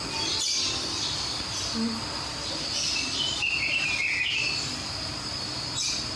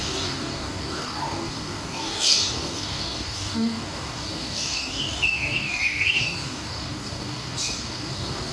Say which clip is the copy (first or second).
second